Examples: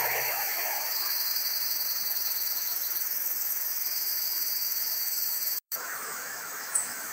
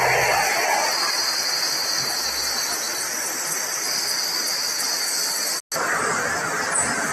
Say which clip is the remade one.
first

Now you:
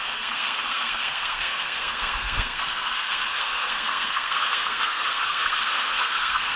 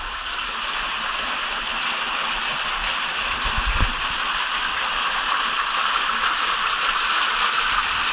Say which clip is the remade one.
first